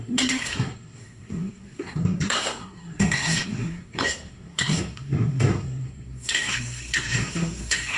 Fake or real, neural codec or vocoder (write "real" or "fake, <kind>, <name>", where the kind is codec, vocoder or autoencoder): fake, codec, SNAC